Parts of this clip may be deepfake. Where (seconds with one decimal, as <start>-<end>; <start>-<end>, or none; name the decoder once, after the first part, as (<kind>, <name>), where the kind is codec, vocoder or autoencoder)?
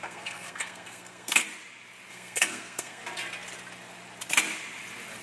0.0-1.4 (codec, SNAC); 2.1-3.0